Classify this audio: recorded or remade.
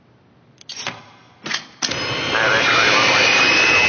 recorded